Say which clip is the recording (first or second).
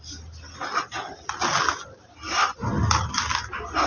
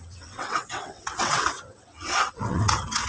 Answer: first